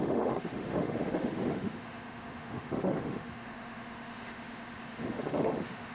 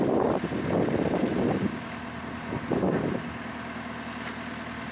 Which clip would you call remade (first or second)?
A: first